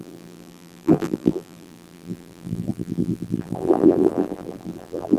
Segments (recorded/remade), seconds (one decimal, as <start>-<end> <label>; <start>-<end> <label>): 0.0-5.2 remade